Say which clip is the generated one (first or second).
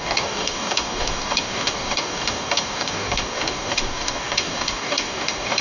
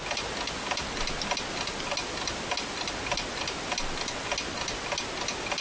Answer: first